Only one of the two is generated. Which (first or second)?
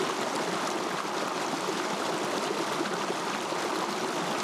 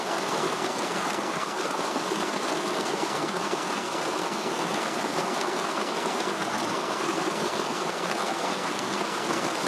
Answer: second